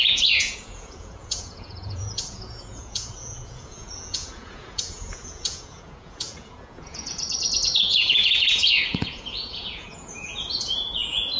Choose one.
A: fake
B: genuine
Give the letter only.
A